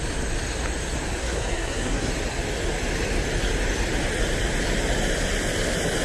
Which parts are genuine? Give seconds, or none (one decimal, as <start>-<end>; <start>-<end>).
0.0-1.2; 2.1-6.0